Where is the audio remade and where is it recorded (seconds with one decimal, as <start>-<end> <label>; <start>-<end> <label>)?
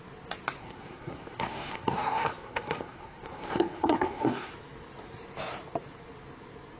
0.0-0.6 recorded; 0.6-4.5 remade; 4.5-6.8 recorded